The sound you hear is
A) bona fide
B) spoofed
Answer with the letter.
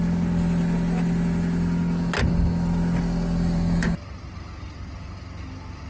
A